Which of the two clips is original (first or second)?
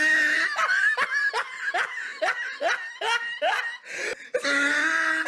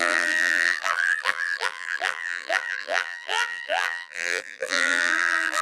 first